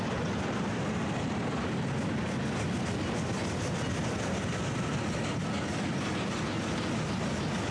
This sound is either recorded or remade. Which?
recorded